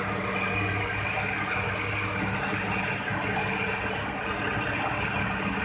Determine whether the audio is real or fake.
real